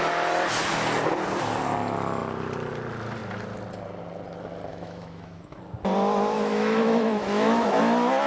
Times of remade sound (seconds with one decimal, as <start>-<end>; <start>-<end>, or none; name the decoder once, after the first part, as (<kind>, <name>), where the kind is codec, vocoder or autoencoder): 4.7-5.6 (autoencoder, DAC-VAE); 6.5-7.8

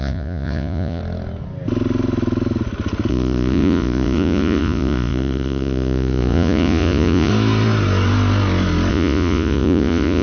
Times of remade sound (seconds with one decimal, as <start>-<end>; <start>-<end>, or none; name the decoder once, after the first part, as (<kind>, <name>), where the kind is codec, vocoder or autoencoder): 0.0-1.0 (vocoder, Vocos); 3.1-7.3; 8.9-10.2

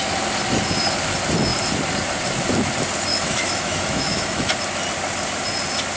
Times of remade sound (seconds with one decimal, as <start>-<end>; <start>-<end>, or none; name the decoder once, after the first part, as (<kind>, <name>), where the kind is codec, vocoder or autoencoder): 3.1-4.5 (autoencoder, DAC-VAE)

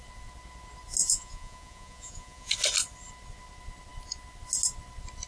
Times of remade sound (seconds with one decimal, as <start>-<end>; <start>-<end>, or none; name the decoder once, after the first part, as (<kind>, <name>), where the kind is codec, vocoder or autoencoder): 1.0-2.5 (vocoder, Vocos)

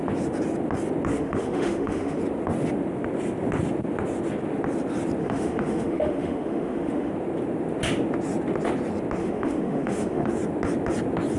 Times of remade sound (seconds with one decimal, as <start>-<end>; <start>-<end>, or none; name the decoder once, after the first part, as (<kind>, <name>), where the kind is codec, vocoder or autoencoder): 1.1-2.2 (autoencoder, DAC-VAE); 5.2-7.1; 9.2-10.3